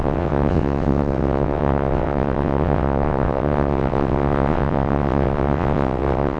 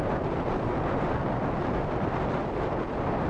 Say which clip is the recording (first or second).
second